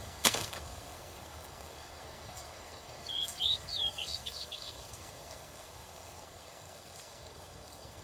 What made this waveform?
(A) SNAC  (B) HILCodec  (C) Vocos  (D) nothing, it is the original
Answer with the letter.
A